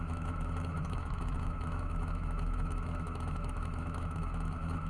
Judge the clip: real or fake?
fake